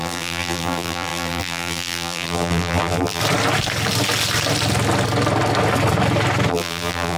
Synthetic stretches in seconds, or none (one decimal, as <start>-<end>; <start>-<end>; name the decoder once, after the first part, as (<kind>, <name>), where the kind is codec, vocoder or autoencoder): 0.0-3.2 (vocoder, BigVGAN v2); 6.5-7.2